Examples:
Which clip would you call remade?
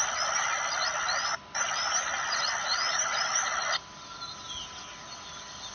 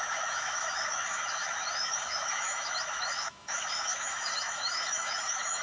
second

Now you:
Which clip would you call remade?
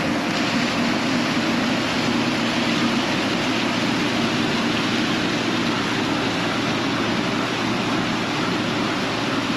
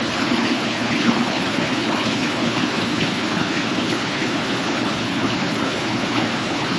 second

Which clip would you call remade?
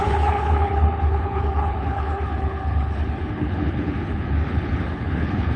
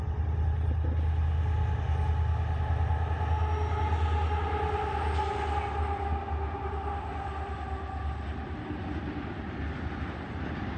first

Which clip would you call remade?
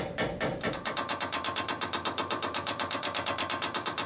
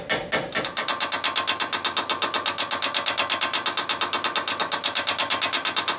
first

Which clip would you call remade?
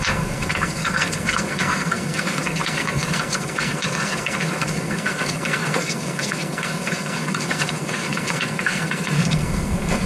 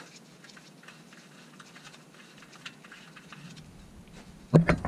first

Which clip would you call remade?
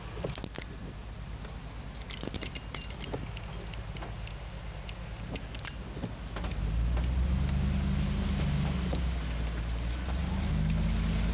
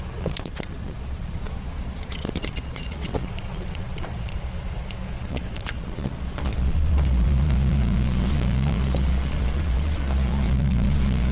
second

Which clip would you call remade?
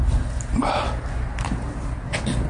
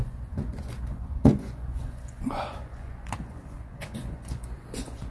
second